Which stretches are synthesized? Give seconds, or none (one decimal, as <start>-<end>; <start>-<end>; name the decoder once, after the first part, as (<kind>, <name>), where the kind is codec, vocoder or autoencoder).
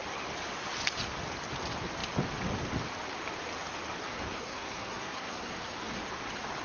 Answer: 4.0-6.0 (codec, SNAC)